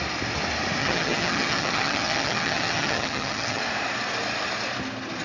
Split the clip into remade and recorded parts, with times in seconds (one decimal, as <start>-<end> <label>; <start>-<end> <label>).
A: 0.0-0.8 recorded; 0.8-3.6 remade; 3.6-5.2 recorded